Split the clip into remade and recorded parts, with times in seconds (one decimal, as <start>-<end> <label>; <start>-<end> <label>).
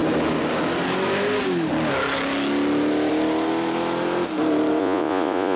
0.0-4.8 recorded; 4.8-5.6 remade